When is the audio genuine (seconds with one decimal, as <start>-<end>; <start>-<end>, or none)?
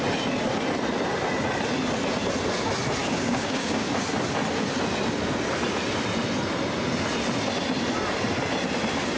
0.0-3.0; 3.9-9.2